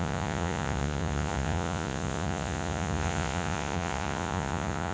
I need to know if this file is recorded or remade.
remade